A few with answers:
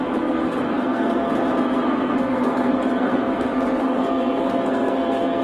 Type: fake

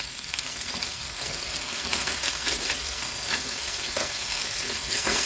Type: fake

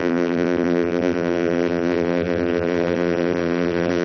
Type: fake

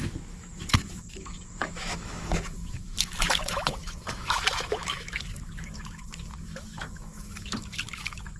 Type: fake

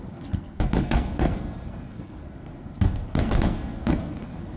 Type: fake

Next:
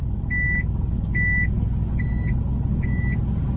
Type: real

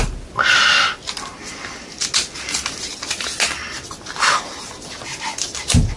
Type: real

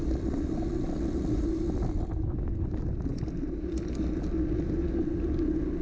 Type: real